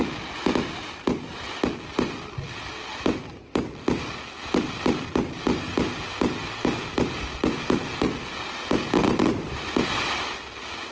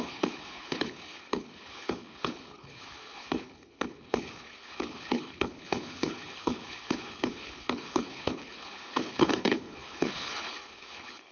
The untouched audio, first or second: first